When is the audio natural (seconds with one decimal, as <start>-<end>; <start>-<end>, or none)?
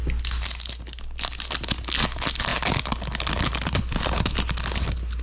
0.0-5.2